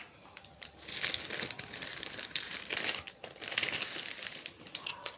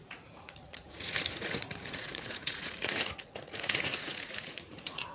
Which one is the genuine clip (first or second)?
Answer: first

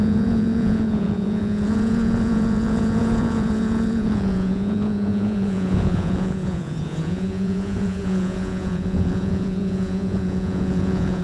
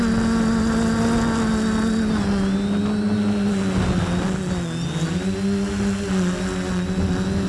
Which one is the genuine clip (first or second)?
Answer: second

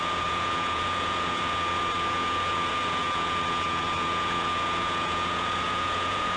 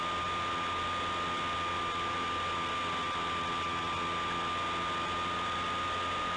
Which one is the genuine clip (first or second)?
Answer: second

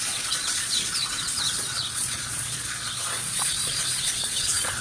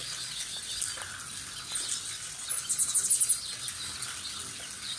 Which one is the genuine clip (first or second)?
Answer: second